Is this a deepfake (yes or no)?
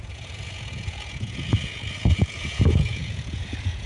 yes